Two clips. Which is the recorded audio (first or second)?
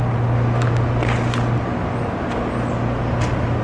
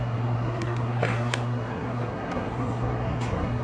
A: first